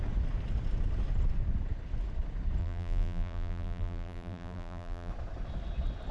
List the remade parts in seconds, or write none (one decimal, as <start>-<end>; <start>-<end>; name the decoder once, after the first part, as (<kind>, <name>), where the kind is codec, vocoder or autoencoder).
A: 2.6-5.1 (vocoder, BigVGAN v2)